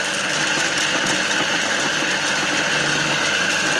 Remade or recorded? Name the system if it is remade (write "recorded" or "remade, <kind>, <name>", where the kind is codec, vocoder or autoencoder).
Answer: recorded